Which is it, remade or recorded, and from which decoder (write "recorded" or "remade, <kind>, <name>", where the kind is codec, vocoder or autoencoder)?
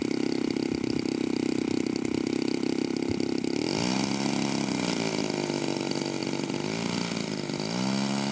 recorded